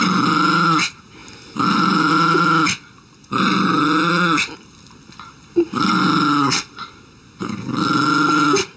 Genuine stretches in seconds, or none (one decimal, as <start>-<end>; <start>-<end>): 0.0-8.8

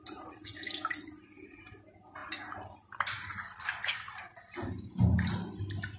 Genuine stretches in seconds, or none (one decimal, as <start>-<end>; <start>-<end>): 0.0-6.0

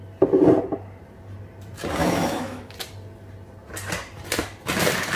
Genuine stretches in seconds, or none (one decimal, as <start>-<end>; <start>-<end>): 0.0-2.0; 2.7-5.2

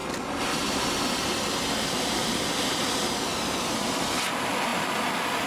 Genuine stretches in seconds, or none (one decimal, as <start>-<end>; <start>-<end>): 0.0-5.5